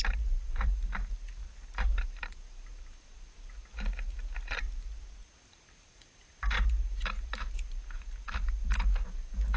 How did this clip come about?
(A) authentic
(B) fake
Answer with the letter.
B